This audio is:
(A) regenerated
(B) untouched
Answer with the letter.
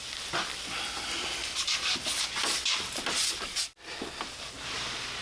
B